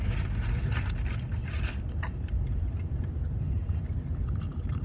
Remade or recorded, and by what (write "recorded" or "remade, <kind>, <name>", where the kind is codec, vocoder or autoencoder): remade, vocoder, BigVGAN v2